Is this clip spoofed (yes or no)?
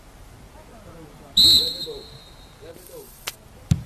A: no